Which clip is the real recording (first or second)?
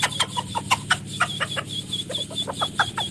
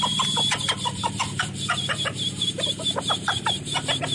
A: first